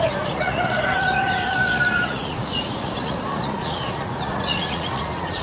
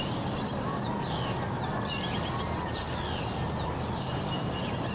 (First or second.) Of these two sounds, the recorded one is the second